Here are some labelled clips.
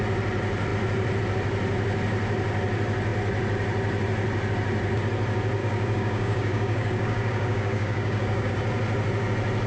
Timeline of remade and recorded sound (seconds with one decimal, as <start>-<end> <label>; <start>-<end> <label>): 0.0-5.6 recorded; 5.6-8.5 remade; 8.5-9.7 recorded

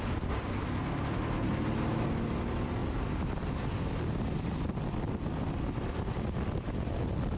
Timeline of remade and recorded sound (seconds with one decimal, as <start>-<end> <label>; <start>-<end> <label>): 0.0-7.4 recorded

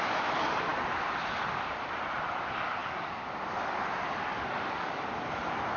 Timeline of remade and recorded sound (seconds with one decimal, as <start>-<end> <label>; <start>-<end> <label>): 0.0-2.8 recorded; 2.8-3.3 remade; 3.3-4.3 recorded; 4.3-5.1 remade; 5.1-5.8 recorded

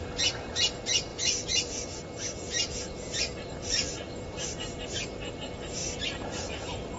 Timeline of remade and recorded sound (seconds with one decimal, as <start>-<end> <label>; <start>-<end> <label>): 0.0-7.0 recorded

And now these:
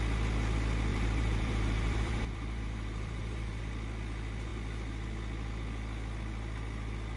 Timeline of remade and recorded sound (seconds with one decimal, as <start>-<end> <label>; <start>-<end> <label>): 0.0-0.9 recorded; 0.9-3.6 remade; 3.6-7.2 recorded

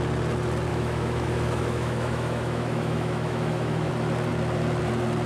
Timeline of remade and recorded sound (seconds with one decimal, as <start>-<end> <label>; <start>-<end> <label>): 0.0-0.7 recorded; 0.7-3.9 remade; 3.9-5.3 recorded

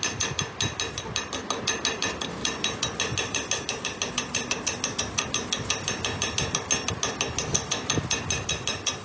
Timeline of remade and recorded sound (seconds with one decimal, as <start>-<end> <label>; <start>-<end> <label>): 0.0-9.0 recorded